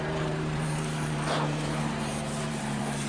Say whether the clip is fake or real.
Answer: fake